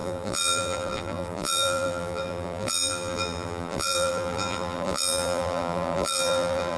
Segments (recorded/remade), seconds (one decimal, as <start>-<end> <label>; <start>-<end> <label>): 0.0-6.8 remade